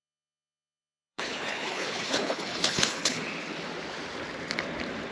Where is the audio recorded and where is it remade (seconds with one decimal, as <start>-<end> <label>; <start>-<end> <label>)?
0.0-3.2 remade; 3.2-5.1 recorded